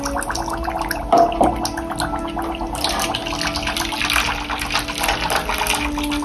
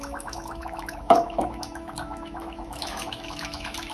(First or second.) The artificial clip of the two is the second